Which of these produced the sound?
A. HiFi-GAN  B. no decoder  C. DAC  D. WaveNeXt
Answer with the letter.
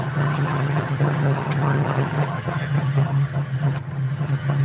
A